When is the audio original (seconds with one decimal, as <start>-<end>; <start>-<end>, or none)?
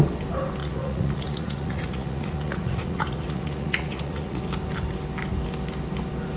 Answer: 0.0-0.6; 4.4-6.4